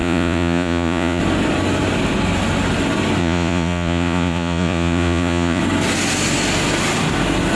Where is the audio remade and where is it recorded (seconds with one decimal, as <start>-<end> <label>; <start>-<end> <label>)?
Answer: 0.0-1.2 remade; 1.2-3.2 recorded; 3.2-5.6 remade; 5.6-7.6 recorded